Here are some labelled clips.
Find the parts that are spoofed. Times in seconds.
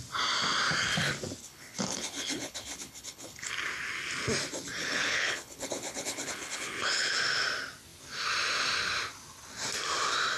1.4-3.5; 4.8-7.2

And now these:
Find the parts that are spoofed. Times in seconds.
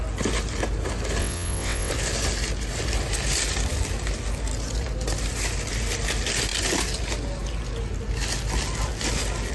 1.2-1.9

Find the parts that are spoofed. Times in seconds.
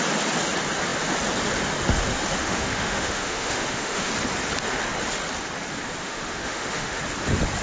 2.4-4.1; 6.0-7.0